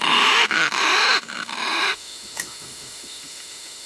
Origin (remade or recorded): remade